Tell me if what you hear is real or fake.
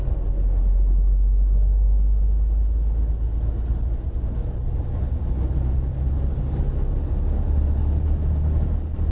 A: real